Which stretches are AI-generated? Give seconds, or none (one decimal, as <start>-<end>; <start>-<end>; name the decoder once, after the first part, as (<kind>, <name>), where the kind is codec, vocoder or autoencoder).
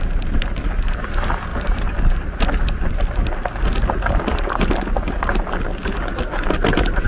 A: none